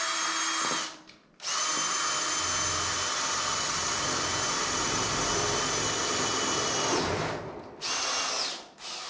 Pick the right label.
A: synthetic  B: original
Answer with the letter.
B